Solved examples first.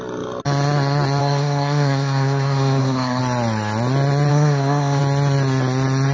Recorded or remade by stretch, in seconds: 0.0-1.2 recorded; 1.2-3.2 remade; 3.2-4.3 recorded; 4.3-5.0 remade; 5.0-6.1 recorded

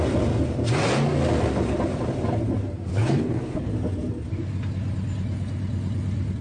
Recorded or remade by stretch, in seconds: 0.0-2.9 recorded; 2.9-3.7 remade; 3.7-6.4 recorded

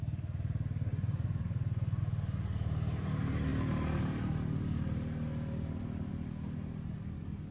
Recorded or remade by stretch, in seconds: 0.0-0.9 recorded; 0.9-2.0 remade; 2.0-7.5 recorded